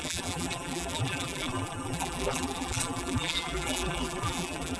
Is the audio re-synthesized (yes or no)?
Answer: yes